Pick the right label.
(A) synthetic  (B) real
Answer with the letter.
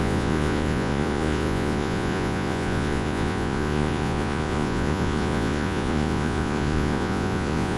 A